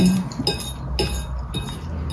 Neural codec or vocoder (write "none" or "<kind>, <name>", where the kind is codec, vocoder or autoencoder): none